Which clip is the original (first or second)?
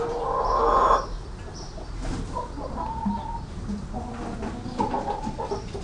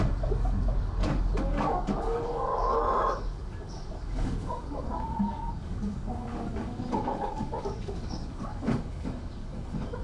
first